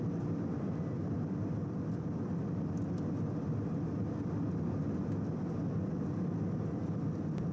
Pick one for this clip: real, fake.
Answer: real